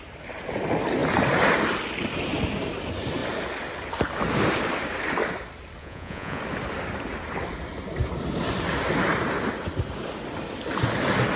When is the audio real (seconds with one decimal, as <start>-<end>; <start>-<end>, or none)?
0.0-5.8; 6.4-11.4